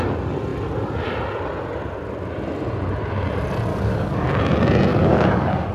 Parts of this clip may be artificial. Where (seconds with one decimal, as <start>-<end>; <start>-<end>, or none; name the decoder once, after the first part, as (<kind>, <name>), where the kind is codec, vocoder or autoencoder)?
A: 3.7-4.4 (codec, DAC); 4.9-5.7

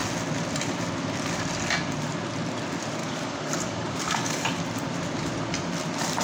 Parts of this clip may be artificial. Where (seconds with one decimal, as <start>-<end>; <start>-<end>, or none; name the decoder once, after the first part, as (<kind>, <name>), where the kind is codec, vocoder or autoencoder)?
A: 3.0-4.6 (codec, DAC)

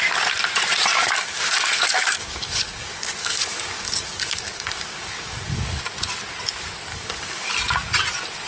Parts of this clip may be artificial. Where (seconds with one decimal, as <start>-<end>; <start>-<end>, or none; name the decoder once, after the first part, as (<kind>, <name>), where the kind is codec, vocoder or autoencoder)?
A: 0.9-5.8 (codec, DAC); 6.9-7.5

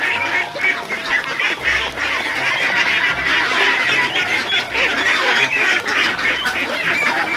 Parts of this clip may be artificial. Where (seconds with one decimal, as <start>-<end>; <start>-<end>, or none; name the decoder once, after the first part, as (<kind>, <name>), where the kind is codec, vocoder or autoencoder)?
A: 5.1-6.3 (codec, DAC)

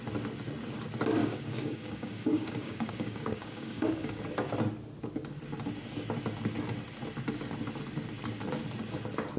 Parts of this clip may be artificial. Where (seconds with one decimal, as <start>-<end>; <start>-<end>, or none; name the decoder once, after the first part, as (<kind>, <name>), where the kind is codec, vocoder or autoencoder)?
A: 1.2-4.2 (codec, DAC)

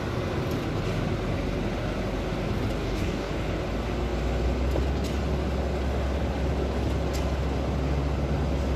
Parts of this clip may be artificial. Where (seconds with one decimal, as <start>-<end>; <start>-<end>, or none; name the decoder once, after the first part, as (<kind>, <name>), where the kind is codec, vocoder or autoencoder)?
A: 2.8-3.3 (codec, DAC)

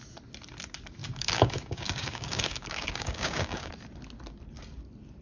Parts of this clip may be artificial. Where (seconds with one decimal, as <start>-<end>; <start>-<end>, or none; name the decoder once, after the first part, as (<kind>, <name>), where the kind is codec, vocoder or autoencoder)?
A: 1.0-3.7 (codec, DAC)